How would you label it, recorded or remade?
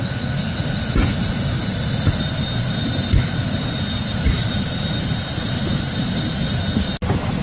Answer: recorded